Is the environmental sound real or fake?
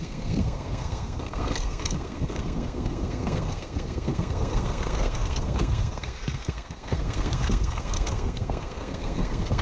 fake